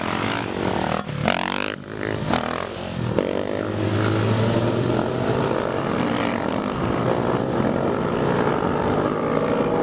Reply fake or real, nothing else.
real